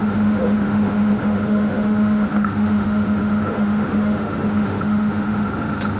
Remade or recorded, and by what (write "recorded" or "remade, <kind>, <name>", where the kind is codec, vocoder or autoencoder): remade, autoencoder, DAC-VAE